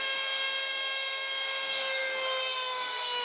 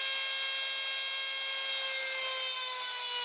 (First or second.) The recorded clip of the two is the second